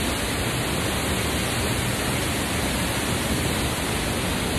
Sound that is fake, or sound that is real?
real